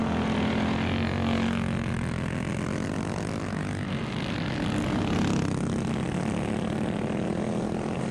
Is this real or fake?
real